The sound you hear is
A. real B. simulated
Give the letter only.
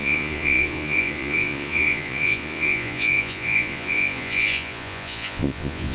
B